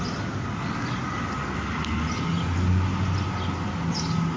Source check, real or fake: real